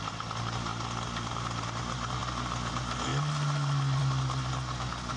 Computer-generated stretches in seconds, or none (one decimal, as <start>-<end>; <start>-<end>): none